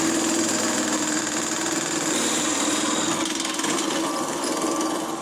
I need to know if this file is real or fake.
real